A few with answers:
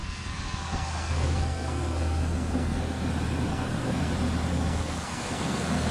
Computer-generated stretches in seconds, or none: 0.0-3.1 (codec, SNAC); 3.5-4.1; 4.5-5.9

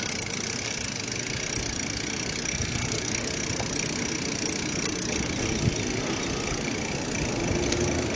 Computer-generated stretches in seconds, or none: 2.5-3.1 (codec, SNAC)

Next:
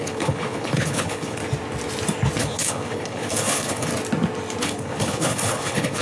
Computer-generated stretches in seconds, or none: 0.0-1.4 (codec, HILCodec); 2.4-3.9; 4.6-6.0

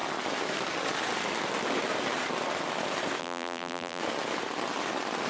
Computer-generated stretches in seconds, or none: 3.2-4.0 (vocoder, BigVGAN v2)

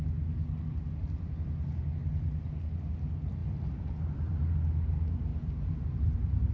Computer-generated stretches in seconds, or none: 3.4-4.5 (vocoder, BigVGAN v2); 5.3-6.1

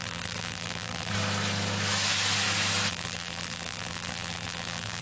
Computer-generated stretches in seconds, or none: 0.0-1.1 (vocoder, BigVGAN v2); 2.9-5.0

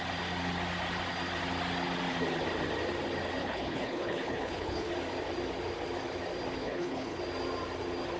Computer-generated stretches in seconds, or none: 3.4-4.9 (codec, HILCodec); 6.6-7.2

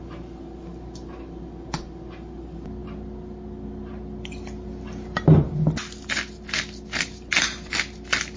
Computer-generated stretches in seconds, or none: none